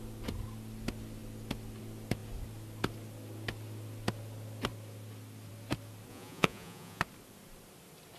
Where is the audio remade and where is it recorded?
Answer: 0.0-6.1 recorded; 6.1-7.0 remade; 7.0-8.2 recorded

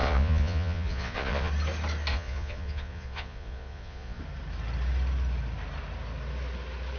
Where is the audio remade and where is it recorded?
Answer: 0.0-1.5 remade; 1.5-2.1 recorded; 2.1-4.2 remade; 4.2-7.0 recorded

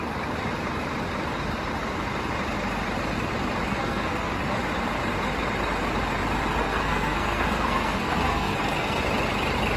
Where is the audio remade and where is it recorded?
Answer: 0.0-3.7 recorded; 3.7-4.5 remade; 4.5-6.6 recorded; 6.6-9.0 remade; 9.0-9.8 recorded